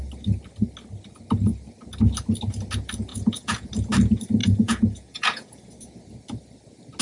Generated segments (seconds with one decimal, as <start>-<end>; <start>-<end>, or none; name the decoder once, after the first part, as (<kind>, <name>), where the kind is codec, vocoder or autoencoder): 3.1-3.7 (vocoder, Vocos); 4.4-5.6